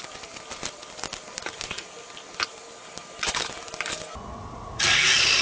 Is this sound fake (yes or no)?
no